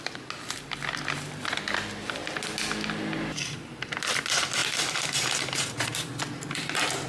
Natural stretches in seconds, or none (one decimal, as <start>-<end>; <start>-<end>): 0.0-7.1